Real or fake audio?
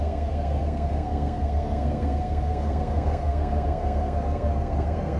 fake